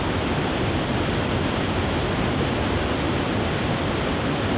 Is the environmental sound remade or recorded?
recorded